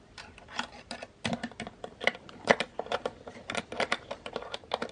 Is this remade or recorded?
remade